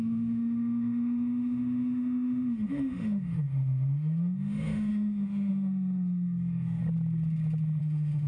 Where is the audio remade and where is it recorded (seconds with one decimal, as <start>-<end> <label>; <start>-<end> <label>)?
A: 0.0-6.8 remade; 6.8-7.8 recorded; 7.8-8.3 remade